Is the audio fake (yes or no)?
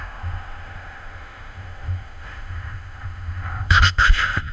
yes